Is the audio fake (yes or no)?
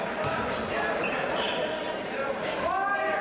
yes